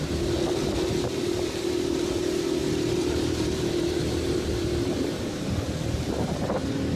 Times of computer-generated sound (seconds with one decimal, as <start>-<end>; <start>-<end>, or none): 0.0-7.0